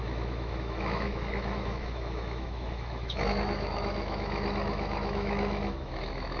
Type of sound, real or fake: fake